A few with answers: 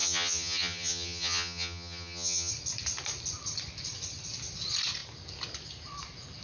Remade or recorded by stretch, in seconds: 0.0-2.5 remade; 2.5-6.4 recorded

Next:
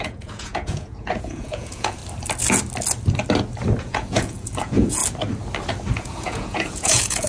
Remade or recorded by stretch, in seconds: 0.0-2.0 remade; 2.0-3.8 recorded; 3.8-5.0 remade; 5.0-5.9 recorded; 5.9-7.3 remade

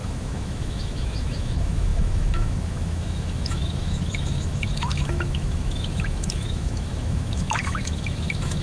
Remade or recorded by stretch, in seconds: 0.0-8.6 remade

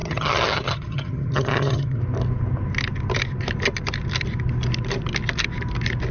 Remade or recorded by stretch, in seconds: 0.0-2.0 remade; 2.0-6.1 recorded

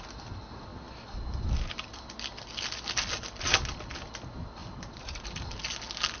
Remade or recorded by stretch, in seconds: 0.0-4.6 recorded; 4.6-5.3 remade; 5.3-6.2 recorded

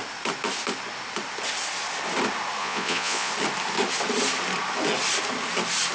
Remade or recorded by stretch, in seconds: 0.0-2.6 recorded; 2.6-3.3 remade; 3.3-5.9 recorded

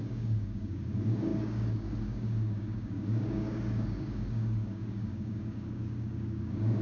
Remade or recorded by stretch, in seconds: 0.0-6.8 remade